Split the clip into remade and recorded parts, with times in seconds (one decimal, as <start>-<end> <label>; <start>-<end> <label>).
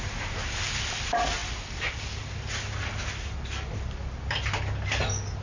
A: 0.0-5.4 recorded